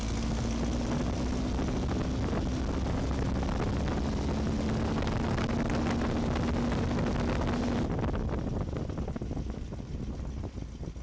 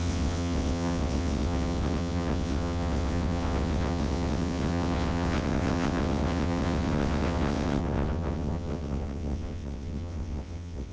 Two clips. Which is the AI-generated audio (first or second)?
second